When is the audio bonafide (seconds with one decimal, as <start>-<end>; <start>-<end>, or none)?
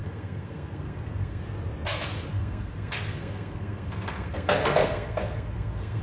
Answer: 1.4-2.3